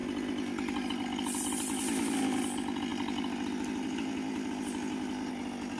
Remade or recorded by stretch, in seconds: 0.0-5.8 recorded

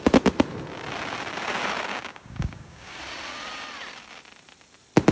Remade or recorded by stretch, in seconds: 0.0-1.9 recorded; 1.9-3.0 remade; 3.0-5.1 recorded

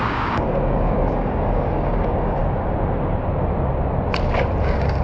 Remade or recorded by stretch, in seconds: 0.0-2.4 remade; 2.4-4.6 recorded; 4.6-5.0 remade

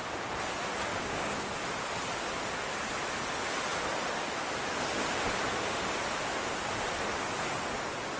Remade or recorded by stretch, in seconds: 0.0-0.9 recorded; 0.9-1.5 remade; 1.5-8.2 recorded